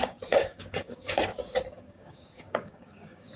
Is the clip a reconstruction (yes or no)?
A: yes